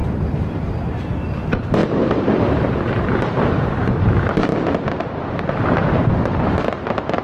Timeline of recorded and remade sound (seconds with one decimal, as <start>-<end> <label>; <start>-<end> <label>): 0.0-4.5 remade; 4.5-5.9 recorded; 5.9-7.2 remade